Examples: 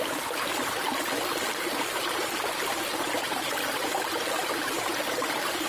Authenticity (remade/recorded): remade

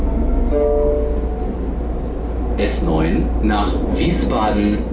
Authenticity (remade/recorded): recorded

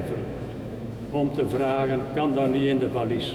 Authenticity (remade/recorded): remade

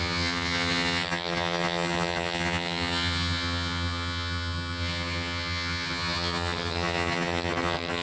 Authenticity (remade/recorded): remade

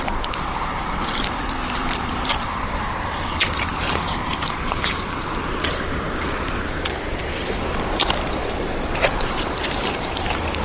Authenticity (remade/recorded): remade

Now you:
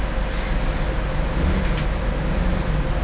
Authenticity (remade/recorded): recorded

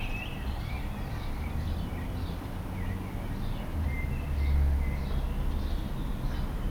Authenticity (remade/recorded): recorded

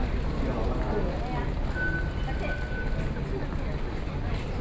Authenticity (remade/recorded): recorded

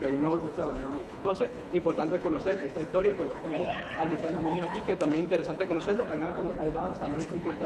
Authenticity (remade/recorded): remade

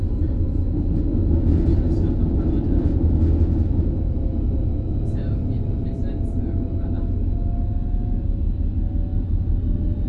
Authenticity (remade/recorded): recorded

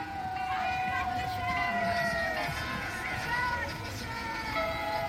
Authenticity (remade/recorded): remade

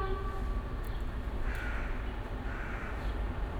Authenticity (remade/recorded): recorded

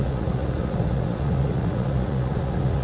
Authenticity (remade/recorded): remade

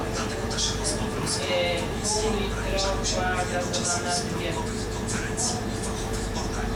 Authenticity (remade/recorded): remade